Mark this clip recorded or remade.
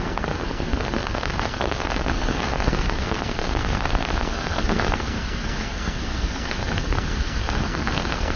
remade